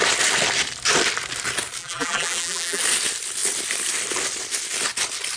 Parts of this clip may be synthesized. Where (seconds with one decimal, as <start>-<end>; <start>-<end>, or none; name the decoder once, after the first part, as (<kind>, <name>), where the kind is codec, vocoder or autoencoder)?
1.8-2.8 (vocoder, BigVGAN v2)